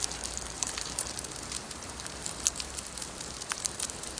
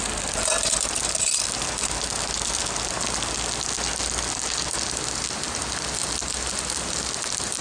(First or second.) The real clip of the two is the second